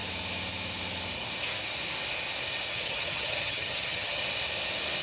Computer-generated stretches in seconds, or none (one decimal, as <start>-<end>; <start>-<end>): 2.7-4.2